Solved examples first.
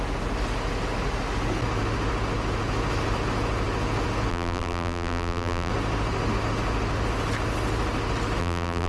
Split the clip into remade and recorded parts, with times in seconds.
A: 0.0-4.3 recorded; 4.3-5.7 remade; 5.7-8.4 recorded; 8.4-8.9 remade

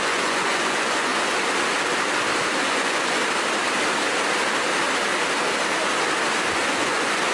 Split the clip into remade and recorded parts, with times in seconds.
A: 0.0-1.1 remade; 1.1-2.6 recorded; 2.6-3.2 remade; 3.2-6.5 recorded; 6.5-7.3 remade